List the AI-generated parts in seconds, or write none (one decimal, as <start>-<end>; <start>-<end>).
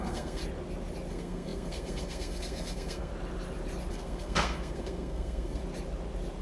0.0-0.4; 1.1-3.1; 3.9-5.6